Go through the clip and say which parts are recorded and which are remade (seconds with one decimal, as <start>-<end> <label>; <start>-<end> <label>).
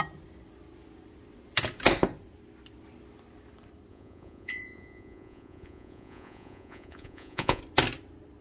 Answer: 0.0-3.9 recorded; 3.9-7.6 remade; 7.6-8.4 recorded